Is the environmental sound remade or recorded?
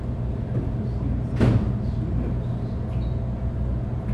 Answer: recorded